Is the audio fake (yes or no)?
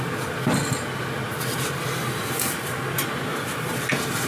no